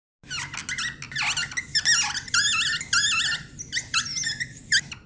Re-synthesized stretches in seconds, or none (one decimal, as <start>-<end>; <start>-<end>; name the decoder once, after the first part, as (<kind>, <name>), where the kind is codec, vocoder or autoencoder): none